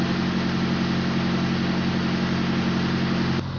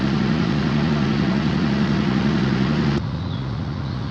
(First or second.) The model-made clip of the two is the second